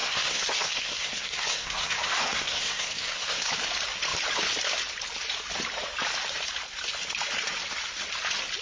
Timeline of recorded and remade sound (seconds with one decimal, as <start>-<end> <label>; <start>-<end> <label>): 0.0-3.5 remade; 3.5-8.6 recorded